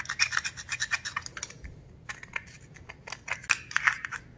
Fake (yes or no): no